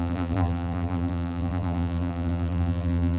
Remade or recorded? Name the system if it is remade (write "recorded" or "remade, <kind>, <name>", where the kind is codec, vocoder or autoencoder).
remade, vocoder, BigVGAN v2